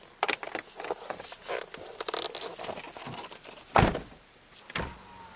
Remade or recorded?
recorded